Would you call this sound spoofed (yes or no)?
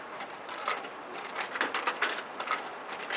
yes